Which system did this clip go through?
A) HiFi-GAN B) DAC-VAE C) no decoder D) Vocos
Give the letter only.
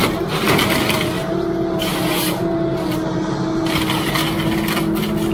C